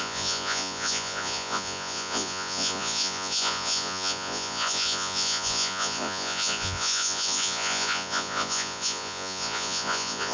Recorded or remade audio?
remade